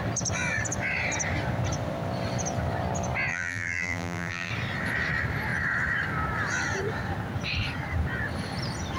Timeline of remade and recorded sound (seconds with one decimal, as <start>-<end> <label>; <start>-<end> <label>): 0.0-3.3 recorded; 3.3-4.5 remade; 4.5-9.0 recorded